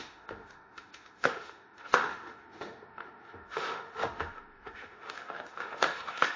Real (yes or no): no